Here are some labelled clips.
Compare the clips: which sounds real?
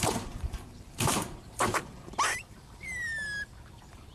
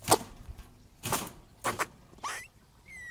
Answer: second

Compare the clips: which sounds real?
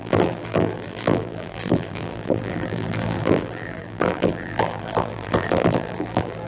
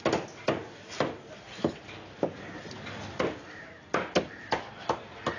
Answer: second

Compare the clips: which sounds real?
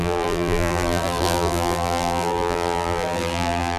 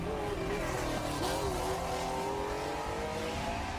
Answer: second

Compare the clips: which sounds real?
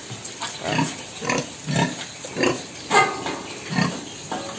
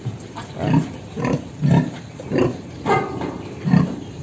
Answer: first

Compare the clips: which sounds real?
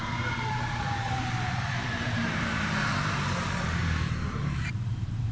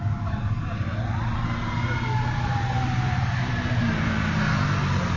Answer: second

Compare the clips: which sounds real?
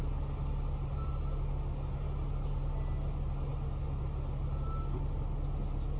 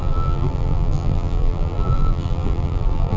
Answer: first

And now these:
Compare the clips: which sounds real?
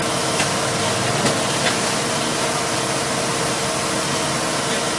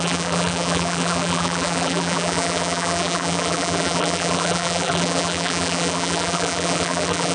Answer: first